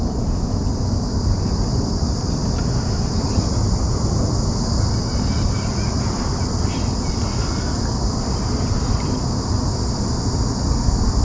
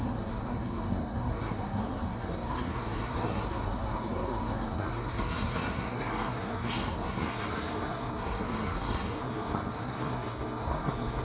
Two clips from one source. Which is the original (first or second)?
first